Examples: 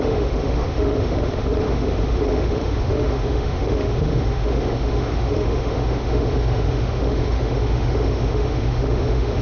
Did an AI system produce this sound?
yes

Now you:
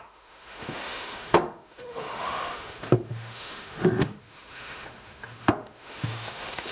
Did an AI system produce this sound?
yes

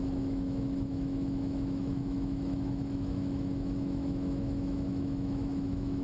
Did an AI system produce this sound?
yes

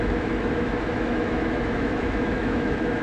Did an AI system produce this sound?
yes